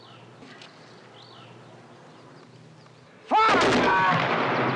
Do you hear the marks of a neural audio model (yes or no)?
no